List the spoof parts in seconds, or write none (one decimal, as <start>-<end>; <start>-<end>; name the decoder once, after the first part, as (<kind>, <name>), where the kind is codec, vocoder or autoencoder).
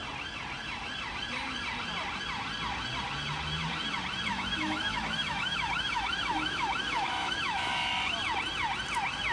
4.3-7.9 (autoencoder, DAC-VAE)